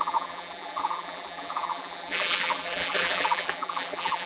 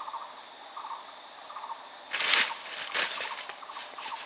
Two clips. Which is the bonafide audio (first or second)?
second